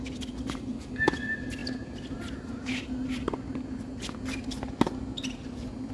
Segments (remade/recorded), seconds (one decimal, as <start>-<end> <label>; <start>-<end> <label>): 0.0-5.9 recorded